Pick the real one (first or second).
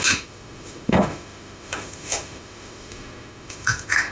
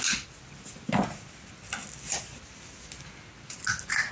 second